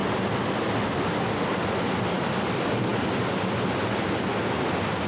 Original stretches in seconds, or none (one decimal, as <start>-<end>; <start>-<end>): 0.0-5.1